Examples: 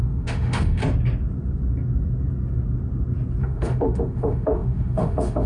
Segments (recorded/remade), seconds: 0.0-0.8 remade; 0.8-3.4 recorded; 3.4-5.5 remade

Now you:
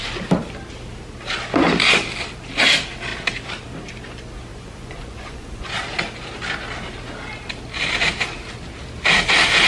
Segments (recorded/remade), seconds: 0.0-4.5 recorded; 4.5-5.7 remade; 5.7-9.7 recorded

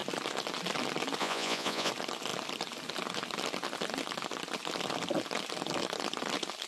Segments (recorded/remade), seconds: 0.0-1.2 recorded; 1.2-1.9 remade; 1.9-6.7 recorded

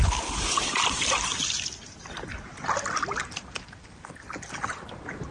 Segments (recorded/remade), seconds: 0.0-5.3 recorded

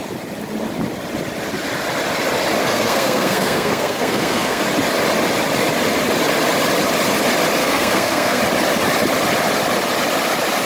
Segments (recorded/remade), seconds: 0.0-2.6 recorded; 2.6-4.6 remade; 4.6-7.6 recorded; 7.6-8.4 remade; 8.4-10.6 recorded